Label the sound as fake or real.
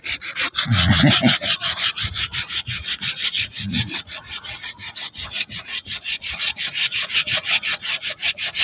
fake